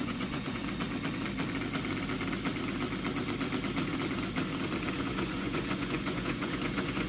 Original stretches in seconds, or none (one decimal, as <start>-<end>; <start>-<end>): 0.6-4.9